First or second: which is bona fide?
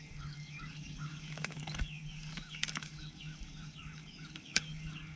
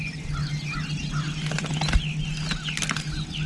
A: second